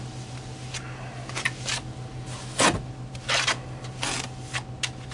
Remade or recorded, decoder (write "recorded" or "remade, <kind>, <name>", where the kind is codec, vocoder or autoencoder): recorded